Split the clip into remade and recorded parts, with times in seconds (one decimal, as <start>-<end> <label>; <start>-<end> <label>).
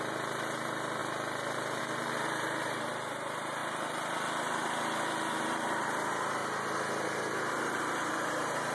0.0-1.0 remade; 1.0-1.8 recorded; 1.8-3.6 remade; 3.6-5.4 recorded; 5.4-6.4 remade; 6.4-7.5 recorded; 7.5-8.7 remade